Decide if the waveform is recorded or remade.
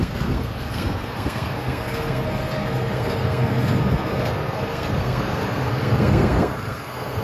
remade